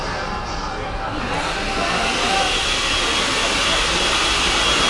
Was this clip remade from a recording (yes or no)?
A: no